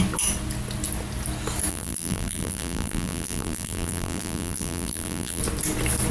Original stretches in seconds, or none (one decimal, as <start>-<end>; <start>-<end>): 0.0-1.7; 5.4-6.1